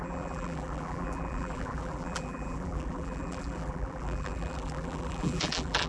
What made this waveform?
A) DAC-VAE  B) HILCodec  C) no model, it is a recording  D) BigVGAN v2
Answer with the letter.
D